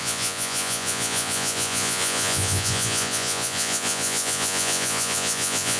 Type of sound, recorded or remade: remade